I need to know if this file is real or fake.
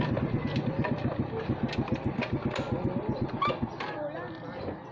real